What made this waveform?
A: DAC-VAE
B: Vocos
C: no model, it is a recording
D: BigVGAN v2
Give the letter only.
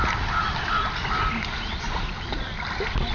C